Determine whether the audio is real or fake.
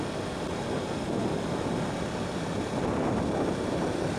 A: real